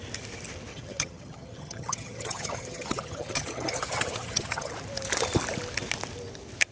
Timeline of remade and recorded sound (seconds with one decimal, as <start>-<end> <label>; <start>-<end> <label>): 0.0-0.7 recorded; 0.7-4.7 remade; 4.7-6.7 recorded